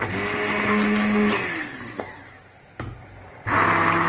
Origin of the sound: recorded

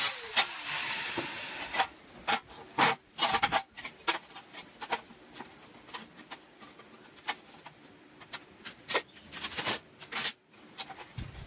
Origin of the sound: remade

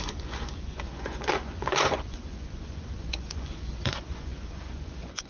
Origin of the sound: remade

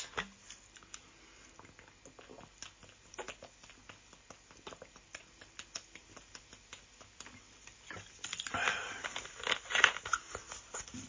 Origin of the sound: recorded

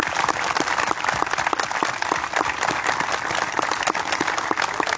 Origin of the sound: recorded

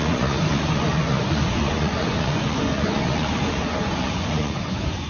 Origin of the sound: remade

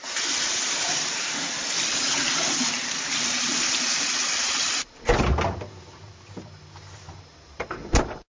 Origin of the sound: recorded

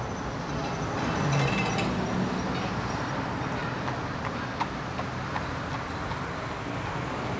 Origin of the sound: recorded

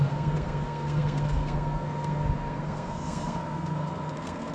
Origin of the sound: remade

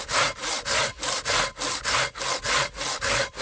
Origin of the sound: recorded